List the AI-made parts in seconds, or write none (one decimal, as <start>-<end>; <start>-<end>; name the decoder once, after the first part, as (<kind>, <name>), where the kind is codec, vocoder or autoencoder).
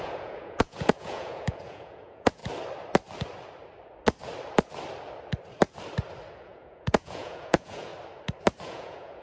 0.0-2.4 (vocoder, Vocos); 6.3-7.9; 8.6-9.2